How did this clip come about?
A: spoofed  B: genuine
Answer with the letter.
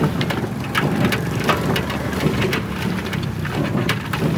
B